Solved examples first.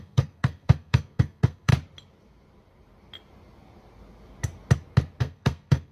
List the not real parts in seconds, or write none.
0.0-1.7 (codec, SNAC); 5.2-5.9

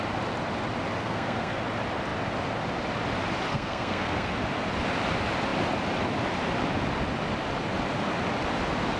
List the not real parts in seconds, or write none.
1.0-1.6 (codec, SNAC); 3.5-4.3

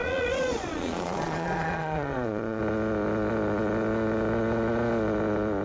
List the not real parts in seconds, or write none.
0.0-2.6 (vocoder, Vocos)

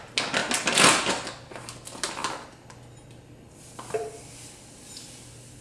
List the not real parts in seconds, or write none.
none

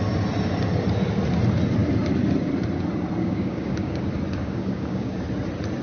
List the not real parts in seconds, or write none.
3.2-4.0 (codec, DAC); 4.4-5.2

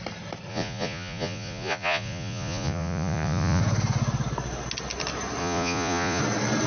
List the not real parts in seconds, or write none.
0.5-3.6 (vocoder, Vocos); 5.4-6.2

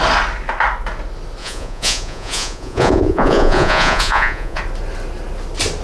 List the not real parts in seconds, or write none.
1.4-4.6 (vocoder, Vocos)